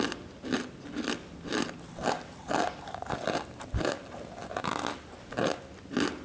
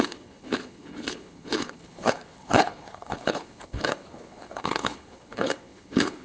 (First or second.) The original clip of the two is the first